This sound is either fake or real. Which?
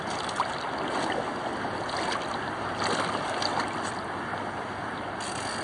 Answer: real